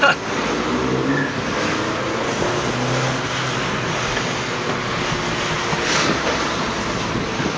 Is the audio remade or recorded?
recorded